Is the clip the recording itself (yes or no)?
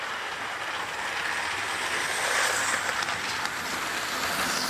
yes